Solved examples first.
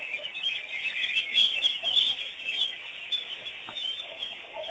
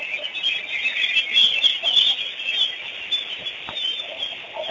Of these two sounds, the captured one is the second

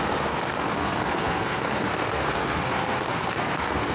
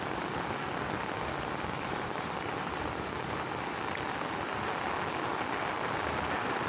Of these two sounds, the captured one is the second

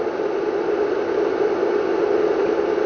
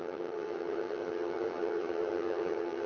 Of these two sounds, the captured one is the first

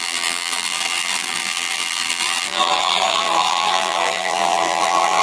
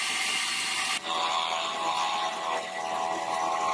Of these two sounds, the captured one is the second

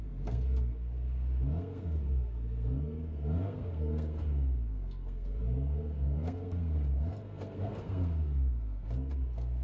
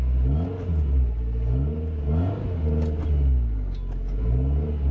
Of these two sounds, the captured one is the second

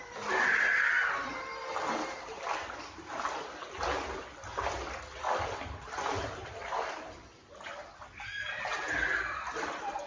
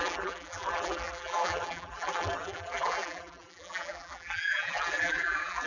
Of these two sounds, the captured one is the first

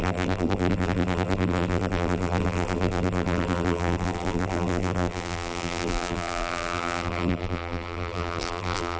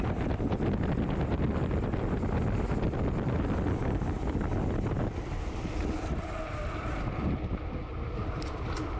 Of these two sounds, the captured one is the second